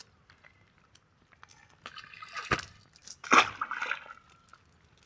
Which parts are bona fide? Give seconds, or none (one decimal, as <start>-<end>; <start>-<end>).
0.0-5.1